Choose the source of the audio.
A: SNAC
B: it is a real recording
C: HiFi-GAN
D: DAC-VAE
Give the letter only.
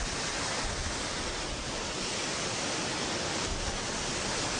B